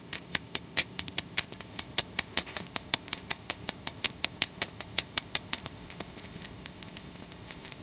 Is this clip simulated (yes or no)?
yes